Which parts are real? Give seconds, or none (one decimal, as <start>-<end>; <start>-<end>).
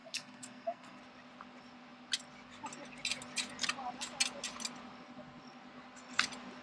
1.0-6.6